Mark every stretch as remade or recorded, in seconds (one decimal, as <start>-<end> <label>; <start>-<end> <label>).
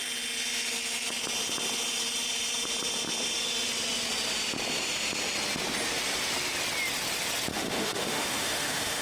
0.0-7.5 recorded; 7.5-9.0 remade